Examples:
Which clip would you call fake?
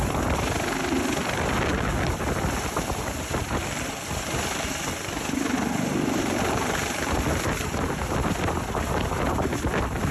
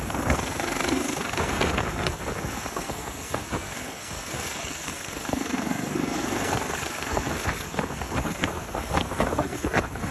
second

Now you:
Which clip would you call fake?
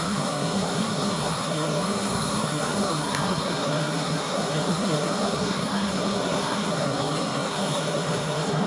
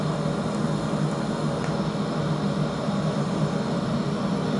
first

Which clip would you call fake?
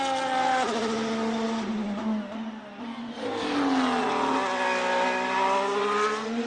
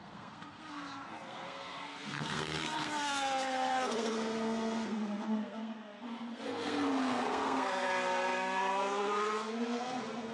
second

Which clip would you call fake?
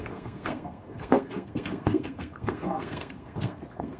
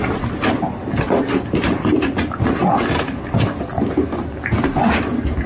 first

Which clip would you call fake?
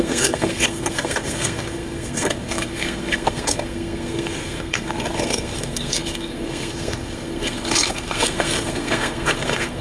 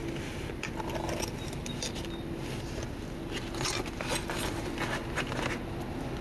first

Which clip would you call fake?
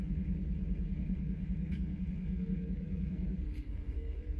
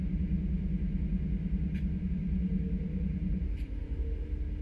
first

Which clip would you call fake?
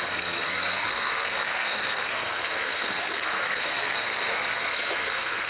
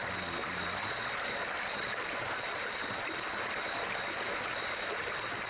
first